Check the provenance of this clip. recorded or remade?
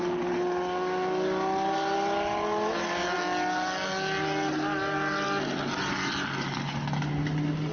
recorded